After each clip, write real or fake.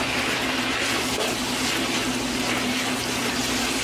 real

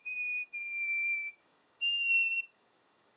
fake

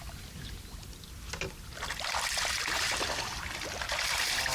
real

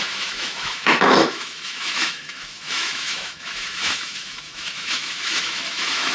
fake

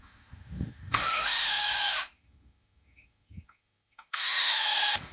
fake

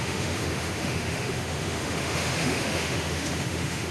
fake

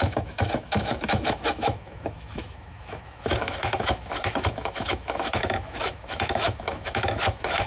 fake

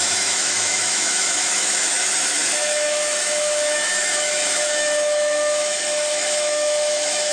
fake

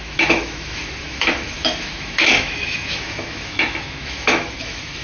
fake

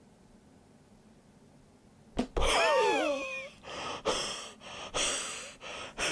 real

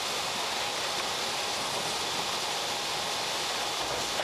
real